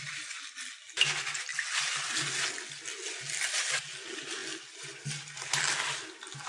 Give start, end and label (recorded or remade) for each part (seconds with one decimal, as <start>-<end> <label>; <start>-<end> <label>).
0.0-6.5 recorded